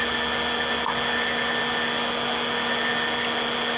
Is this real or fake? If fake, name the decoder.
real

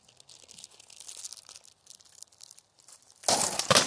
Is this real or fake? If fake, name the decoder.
real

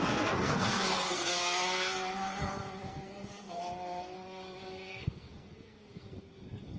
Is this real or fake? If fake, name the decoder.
fake, codec, SNAC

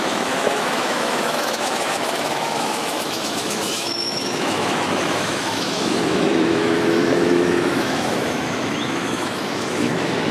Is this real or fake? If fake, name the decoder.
fake, autoencoder, DAC-VAE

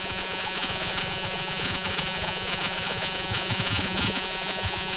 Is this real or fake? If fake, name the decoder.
fake, vocoder, Vocos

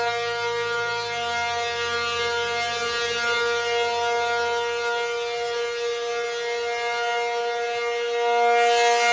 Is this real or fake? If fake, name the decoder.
real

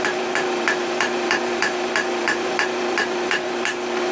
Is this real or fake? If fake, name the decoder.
fake, vocoder, BigVGAN v2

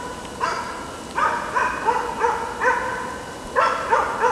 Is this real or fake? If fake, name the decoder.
real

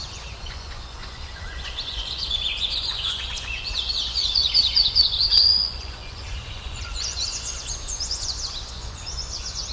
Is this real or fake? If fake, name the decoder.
fake, vocoder, Vocos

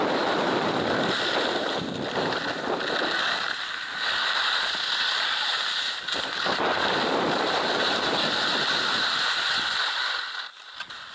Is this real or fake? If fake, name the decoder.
real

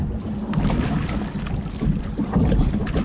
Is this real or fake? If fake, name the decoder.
real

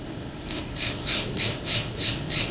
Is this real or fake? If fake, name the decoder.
fake, codec, ZipCodec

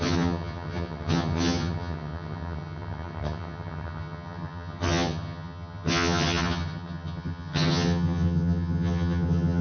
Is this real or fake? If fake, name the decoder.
fake, vocoder, HiFi-GAN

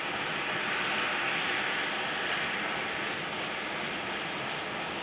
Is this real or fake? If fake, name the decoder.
real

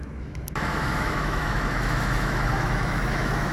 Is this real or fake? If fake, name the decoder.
fake, autoencoder, DAC-VAE